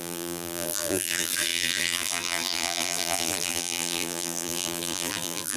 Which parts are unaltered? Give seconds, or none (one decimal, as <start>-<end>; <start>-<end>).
none